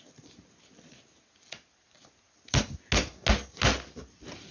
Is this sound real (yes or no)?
yes